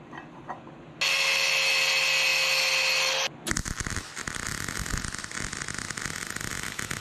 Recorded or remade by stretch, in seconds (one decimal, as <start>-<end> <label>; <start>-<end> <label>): 0.0-7.0 recorded